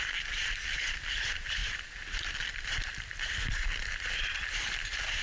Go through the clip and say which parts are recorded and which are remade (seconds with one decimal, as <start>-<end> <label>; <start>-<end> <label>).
0.0-5.2 recorded